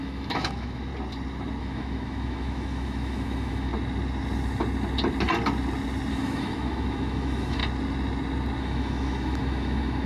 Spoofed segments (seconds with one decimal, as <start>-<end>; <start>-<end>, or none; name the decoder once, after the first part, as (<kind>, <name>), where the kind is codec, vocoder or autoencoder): 0.0-0.9 (autoencoder, DAC-VAE); 1.6-3.7; 6.1-7.6; 8.6-10.1